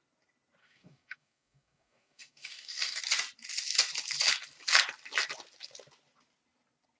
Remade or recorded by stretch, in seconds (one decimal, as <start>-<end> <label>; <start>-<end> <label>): 0.0-0.6 recorded; 0.6-3.0 remade; 3.0-7.0 recorded